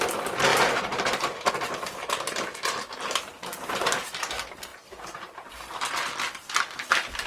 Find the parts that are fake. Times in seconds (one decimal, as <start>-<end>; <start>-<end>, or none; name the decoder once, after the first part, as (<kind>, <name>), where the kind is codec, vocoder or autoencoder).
0.5-1.5 (vocoder, BigVGAN v2); 4.7-5.5